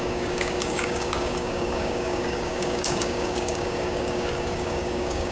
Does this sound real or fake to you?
fake